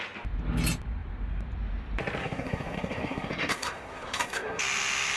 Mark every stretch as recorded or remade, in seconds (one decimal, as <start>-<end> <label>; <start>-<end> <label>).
0.0-2.2 recorded; 2.2-4.6 remade; 4.6-5.2 recorded